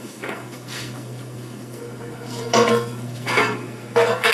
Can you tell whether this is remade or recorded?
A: remade